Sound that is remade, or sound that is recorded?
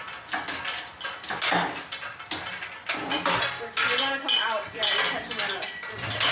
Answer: recorded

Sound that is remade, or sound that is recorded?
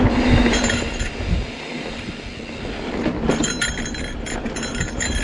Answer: recorded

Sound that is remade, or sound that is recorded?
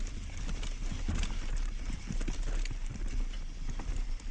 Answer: recorded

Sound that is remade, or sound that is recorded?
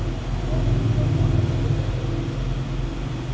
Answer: recorded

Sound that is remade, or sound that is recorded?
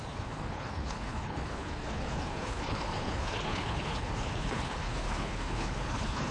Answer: remade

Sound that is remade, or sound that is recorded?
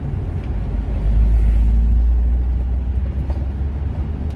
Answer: recorded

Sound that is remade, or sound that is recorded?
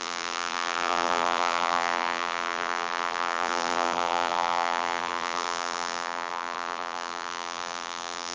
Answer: remade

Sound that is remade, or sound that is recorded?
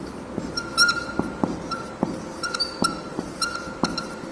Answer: recorded